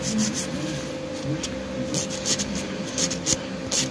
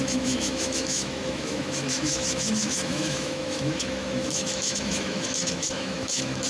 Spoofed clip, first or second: second